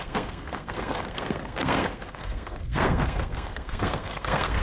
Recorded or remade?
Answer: remade